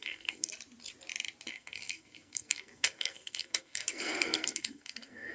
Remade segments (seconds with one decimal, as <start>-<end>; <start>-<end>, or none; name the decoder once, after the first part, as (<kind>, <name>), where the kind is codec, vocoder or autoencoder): 0.0-0.5 (codec, SNAC); 1.5-5.3